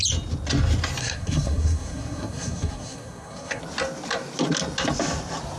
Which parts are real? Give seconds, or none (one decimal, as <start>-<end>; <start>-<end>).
0.0-1.0; 3.6-5.6